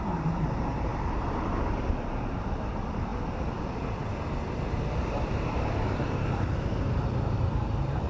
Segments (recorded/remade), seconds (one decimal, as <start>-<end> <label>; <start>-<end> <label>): 0.0-0.9 remade; 0.9-1.7 recorded; 1.7-3.1 remade; 3.1-3.6 recorded; 3.6-4.1 remade; 4.1-5.1 recorded; 5.1-8.1 remade